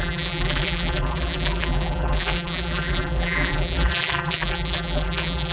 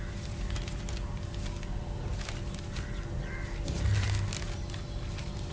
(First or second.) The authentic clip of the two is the second